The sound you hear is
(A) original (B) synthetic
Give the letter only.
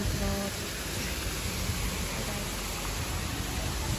A